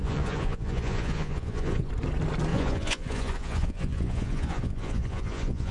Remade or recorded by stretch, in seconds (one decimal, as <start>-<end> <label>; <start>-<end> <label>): 0.0-1.9 remade; 1.9-2.5 recorded; 2.5-5.7 remade